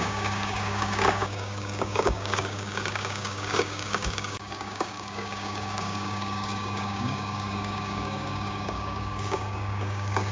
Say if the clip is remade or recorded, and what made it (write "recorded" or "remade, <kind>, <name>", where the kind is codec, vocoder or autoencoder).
remade, codec, DAC